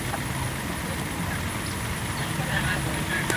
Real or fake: real